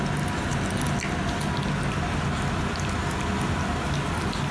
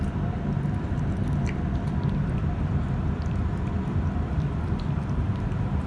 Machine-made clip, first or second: second